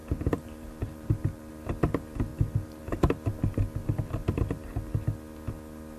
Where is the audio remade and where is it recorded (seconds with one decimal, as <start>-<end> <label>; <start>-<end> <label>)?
0.0-1.5 remade; 1.5-2.3 recorded; 2.3-3.1 remade; 3.1-3.8 recorded; 3.8-4.4 remade; 4.4-6.0 recorded